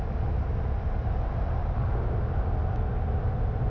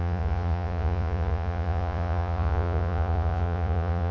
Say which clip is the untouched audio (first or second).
first